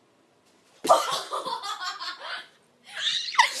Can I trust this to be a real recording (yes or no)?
yes